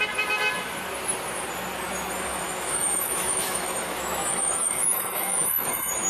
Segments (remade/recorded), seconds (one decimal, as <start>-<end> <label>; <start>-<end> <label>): 0.0-2.3 recorded; 2.3-6.1 remade